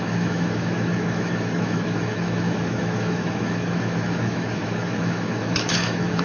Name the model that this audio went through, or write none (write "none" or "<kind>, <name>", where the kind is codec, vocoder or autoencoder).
autoencoder, DAC-VAE